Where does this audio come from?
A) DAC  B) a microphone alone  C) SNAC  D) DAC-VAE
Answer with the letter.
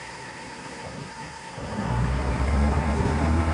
C